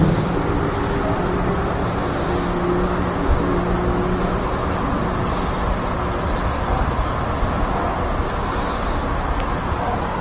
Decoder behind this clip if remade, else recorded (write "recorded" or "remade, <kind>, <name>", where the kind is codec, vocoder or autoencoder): recorded